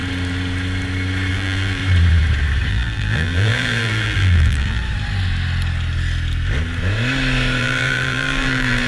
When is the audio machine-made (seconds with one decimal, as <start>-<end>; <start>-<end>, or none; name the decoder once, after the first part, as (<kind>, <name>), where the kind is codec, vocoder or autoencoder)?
1.3-1.8 (vocoder, BigVGAN v2); 2.7-4.8; 7.6-8.9